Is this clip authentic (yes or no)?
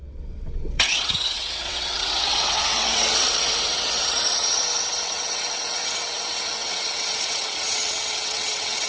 no